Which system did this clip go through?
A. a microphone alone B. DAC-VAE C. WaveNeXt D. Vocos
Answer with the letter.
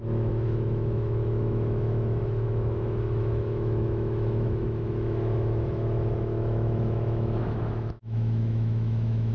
B